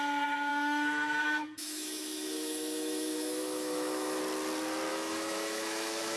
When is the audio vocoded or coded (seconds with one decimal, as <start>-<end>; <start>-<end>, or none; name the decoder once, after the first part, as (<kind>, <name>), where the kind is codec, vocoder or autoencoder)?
0.5-4.2 (autoencoder, DAC-VAE); 4.9-6.2